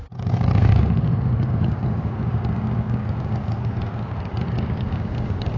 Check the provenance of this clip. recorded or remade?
remade